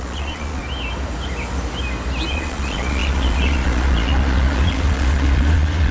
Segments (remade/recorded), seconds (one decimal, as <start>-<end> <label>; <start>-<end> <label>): 0.0-0.6 remade; 0.6-2.3 recorded; 2.3-5.9 remade